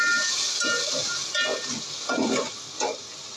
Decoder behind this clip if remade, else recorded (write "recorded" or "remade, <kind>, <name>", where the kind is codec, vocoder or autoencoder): recorded